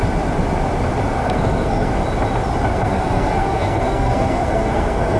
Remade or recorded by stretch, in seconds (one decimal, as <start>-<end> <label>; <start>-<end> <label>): 0.0-1.2 recorded; 1.2-1.9 remade; 1.9-2.7 recorded; 2.7-5.2 remade